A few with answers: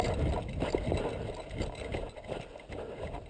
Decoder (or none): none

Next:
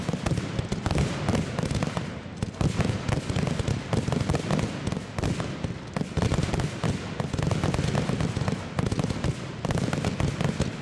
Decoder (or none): none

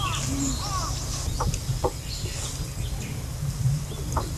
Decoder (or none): none